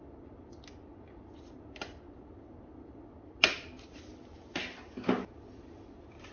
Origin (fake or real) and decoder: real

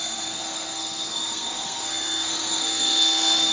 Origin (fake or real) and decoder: fake, codec, SNAC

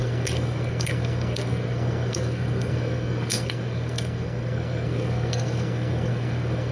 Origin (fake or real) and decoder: fake, codec, SNAC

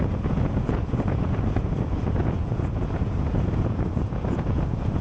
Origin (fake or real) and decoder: fake, vocoder, Vocos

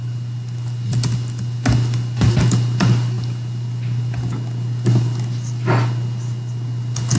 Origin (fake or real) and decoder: real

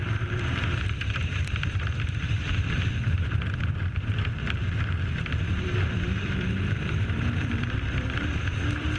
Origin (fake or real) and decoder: fake, vocoder, BigVGAN v2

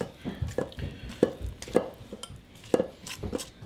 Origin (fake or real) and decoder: real